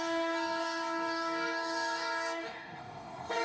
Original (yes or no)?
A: no